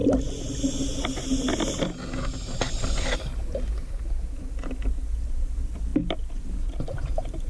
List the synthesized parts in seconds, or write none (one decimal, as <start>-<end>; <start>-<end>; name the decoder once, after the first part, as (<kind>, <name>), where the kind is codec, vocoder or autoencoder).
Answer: none